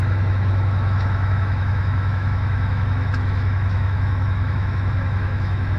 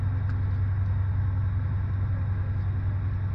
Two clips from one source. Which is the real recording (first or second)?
second